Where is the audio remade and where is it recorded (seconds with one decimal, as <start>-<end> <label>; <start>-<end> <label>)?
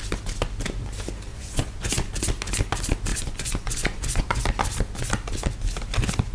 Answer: 0.0-1.3 recorded; 1.3-2.1 remade; 2.1-3.1 recorded; 3.1-4.4 remade; 4.4-6.3 recorded